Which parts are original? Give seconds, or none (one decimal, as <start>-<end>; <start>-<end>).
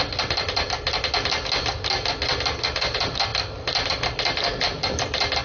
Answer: 0.0-5.4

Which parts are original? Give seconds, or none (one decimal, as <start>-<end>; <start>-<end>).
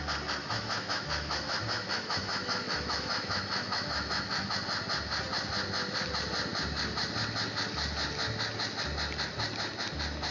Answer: 0.0-0.4; 4.5-10.3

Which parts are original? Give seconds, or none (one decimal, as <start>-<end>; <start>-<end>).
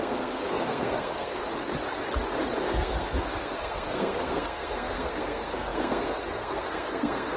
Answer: 1.4-2.6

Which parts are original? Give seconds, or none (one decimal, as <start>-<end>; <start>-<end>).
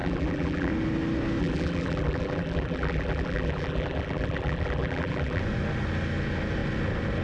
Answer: 0.7-1.4; 5.4-7.2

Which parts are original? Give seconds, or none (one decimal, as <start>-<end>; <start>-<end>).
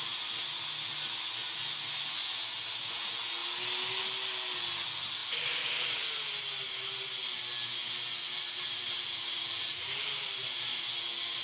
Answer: 0.0-5.2; 5.7-7.8; 10.9-11.4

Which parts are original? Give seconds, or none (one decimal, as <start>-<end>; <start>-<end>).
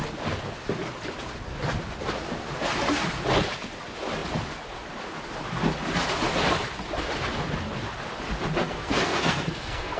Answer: 0.0-8.6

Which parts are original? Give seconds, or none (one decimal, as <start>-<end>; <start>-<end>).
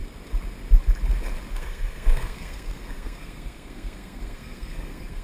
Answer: 0.0-1.5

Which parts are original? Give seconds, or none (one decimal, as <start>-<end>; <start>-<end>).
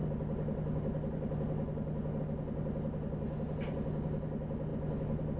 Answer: 0.0-5.4